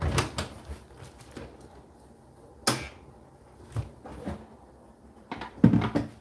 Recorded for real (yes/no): yes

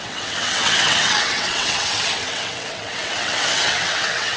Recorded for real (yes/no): no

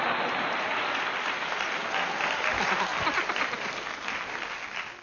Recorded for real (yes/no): yes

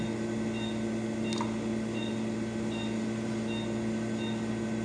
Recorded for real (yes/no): yes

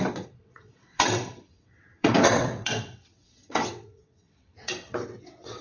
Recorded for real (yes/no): no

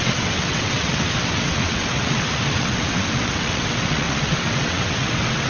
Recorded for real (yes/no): no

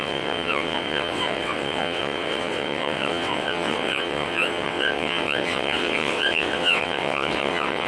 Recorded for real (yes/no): no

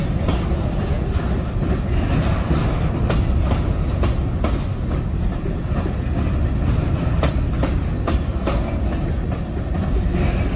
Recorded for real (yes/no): yes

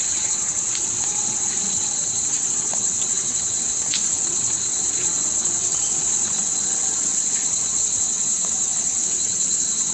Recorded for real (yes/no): no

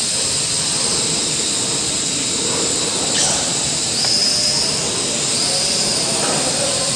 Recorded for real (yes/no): yes